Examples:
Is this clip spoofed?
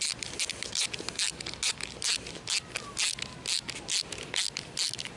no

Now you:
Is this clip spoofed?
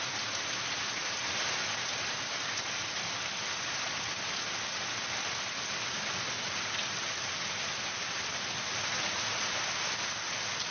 no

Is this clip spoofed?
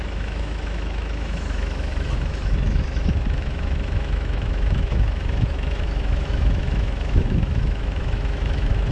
yes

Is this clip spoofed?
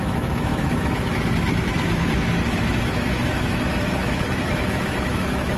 yes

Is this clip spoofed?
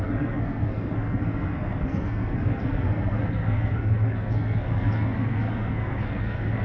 yes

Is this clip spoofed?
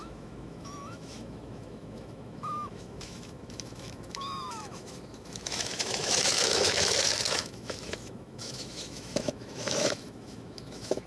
yes